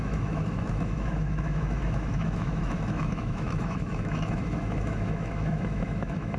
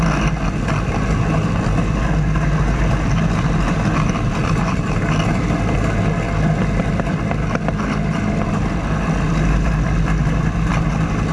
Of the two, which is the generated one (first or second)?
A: first